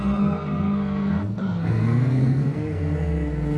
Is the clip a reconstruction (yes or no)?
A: yes